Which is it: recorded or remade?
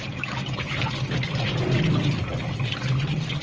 recorded